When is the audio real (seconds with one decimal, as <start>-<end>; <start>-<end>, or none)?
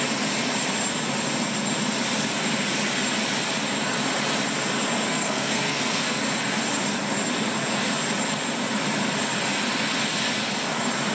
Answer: 0.0-5.1; 6.2-11.1